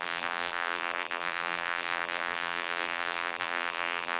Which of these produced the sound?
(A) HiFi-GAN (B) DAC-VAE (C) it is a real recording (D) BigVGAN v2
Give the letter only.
D